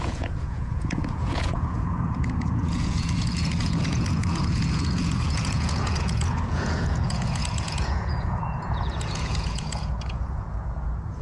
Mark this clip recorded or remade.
remade